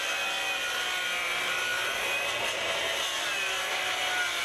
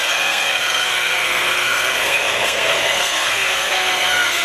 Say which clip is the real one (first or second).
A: first